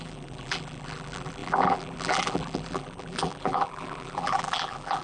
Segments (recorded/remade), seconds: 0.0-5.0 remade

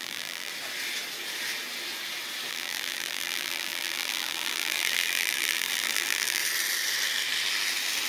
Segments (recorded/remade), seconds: 0.0-0.5 remade; 0.5-2.5 recorded; 2.5-6.4 remade; 6.4-8.1 recorded

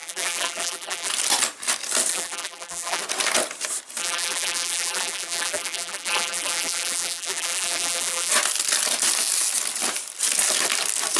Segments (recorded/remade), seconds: 0.0-1.1 remade; 1.1-2.1 recorded; 2.1-3.0 remade; 3.0-4.0 recorded; 4.0-8.3 remade; 8.3-11.2 recorded

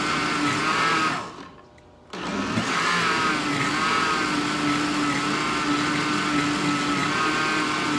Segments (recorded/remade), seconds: 0.0-8.0 recorded

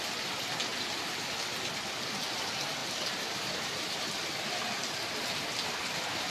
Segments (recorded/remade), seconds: 0.0-2.8 recorded; 2.8-4.1 remade; 4.1-6.3 recorded

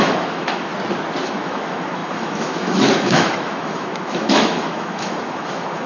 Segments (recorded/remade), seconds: 0.0-0.7 remade; 0.7-1.2 recorded; 1.2-5.9 remade

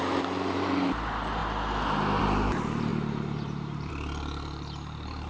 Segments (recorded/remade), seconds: 0.0-1.4 remade; 1.4-2.2 recorded; 2.2-5.3 remade